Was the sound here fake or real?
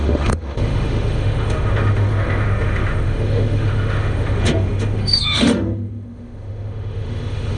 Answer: fake